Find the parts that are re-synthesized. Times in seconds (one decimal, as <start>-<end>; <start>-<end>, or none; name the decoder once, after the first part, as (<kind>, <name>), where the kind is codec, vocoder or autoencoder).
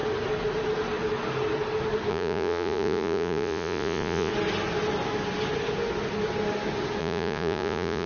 2.1-4.3 (vocoder, Vocos); 7.0-8.1